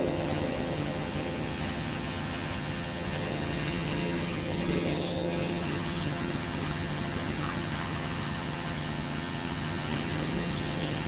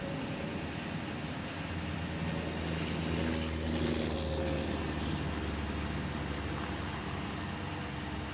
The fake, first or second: first